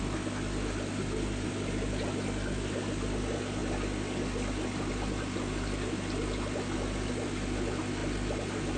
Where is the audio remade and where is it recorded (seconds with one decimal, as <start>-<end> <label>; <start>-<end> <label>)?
0.0-8.8 recorded